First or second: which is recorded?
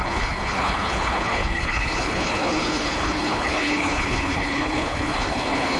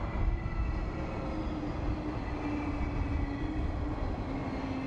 second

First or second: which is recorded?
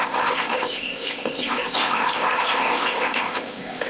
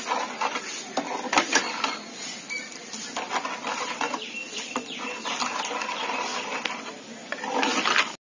second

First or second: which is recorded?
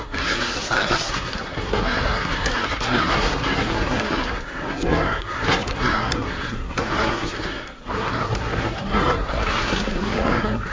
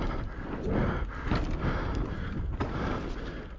second